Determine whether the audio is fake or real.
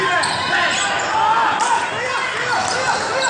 real